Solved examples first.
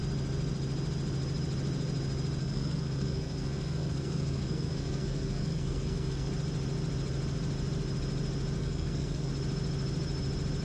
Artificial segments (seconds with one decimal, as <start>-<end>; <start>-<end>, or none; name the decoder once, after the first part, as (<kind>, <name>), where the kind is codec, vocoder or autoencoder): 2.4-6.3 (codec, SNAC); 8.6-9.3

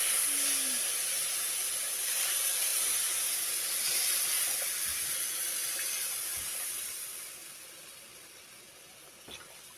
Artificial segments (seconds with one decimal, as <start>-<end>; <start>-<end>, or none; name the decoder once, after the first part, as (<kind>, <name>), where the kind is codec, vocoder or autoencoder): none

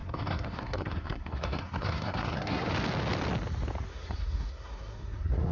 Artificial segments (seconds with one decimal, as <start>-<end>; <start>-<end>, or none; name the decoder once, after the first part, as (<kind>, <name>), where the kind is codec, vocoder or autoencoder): 0.0-2.7 (codec, SNAC); 3.9-5.5

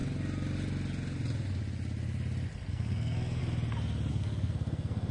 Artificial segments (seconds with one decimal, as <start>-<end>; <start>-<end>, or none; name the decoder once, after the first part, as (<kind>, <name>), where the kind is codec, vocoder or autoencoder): 2.7-3.4 (codec, SNAC); 4.1-5.1